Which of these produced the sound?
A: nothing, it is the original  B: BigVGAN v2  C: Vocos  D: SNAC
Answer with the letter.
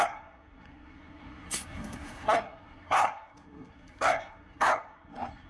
D